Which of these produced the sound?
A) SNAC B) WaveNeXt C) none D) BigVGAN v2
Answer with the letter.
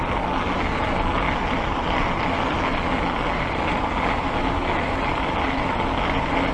C